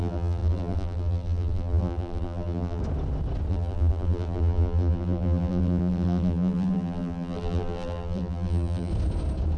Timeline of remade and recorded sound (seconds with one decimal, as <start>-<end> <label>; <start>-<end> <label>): 0.0-2.8 remade; 2.8-3.5 recorded; 3.5-8.9 remade; 8.9-9.6 recorded